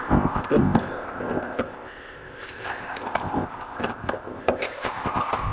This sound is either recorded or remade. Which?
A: remade